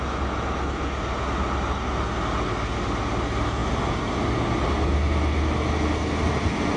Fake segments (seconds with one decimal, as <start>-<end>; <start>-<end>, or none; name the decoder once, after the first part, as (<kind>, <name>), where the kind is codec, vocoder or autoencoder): none